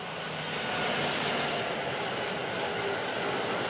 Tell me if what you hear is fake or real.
real